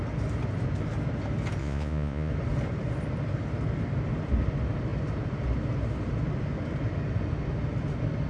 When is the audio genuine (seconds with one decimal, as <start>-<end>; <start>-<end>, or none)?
0.0-1.6; 2.3-8.3

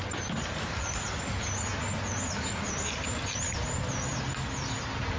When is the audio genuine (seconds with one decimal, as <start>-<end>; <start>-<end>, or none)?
0.0-5.2

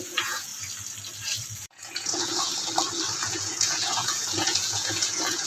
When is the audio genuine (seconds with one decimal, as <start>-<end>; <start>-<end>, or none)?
0.5-1.5; 2.5-3.2